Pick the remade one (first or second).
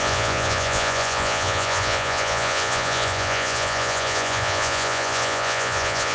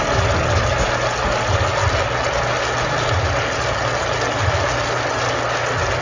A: first